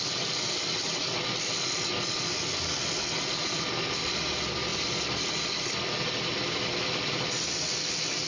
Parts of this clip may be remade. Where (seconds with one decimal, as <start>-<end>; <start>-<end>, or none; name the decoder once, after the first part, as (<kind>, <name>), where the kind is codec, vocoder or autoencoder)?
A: none